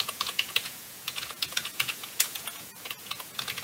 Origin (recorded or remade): remade